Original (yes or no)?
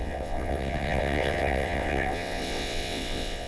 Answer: no